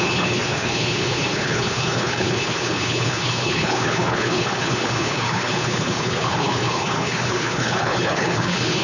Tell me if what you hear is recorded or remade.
remade